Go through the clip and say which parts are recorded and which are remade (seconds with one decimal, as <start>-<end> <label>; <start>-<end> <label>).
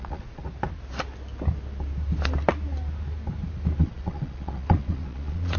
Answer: 0.0-0.4 remade; 0.4-3.8 recorded; 3.8-5.6 remade